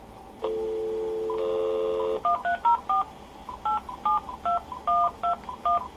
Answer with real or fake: real